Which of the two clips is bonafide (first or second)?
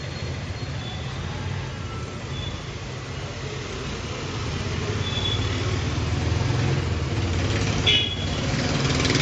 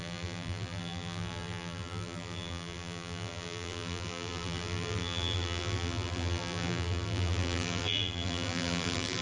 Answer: first